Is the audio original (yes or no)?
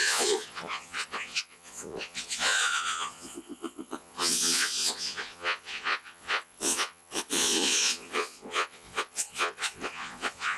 no